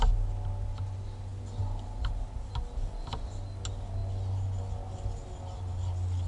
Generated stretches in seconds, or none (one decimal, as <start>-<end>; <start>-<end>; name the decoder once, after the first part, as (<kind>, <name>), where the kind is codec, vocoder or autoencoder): none

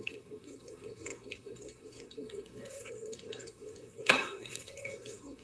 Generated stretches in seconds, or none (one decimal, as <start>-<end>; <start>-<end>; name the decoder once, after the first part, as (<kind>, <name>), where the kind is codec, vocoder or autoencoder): 0.0-5.4 (codec, SNAC)

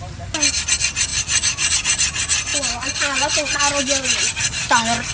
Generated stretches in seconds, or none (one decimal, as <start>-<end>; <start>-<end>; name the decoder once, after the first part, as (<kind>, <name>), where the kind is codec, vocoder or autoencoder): none

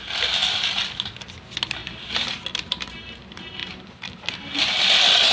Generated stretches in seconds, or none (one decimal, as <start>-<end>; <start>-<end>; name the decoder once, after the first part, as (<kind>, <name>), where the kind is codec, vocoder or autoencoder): none

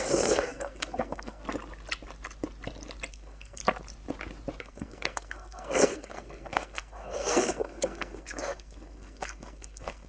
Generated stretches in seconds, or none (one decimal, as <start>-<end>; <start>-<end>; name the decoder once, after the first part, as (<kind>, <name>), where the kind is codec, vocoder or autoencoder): 0.0-1.4 (codec, SNAC); 3.1-3.6; 4.6-10.1

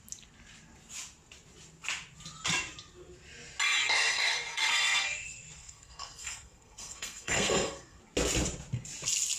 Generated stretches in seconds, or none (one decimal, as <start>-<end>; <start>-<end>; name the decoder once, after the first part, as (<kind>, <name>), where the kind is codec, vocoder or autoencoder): 3.8-8.0 (codec, SNAC)

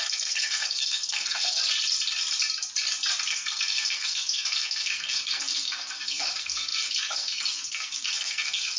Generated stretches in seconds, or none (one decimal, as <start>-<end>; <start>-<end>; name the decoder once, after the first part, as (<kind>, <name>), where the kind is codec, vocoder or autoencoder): 0.0-1.6 (codec, SNAC); 3.3-8.8